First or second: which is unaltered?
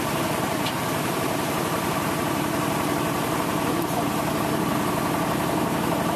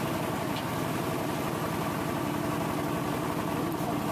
second